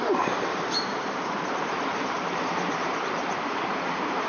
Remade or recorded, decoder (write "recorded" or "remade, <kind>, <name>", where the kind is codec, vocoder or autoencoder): remade, vocoder, BigVGAN v2